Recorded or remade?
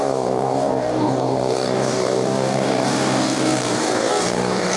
remade